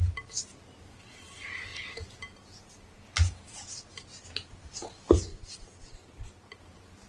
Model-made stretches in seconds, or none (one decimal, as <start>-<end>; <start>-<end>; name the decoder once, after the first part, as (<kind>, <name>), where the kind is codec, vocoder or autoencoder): 5.3-6.6 (vocoder, BigVGAN v2)